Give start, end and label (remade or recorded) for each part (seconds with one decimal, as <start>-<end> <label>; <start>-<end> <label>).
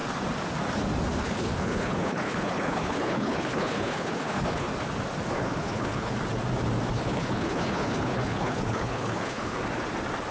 0.0-1.2 recorded; 1.2-4.7 remade; 4.7-5.3 recorded; 5.3-6.1 remade; 6.1-6.9 recorded; 6.9-9.6 remade; 9.6-10.3 recorded